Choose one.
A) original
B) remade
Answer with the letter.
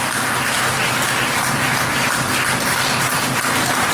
A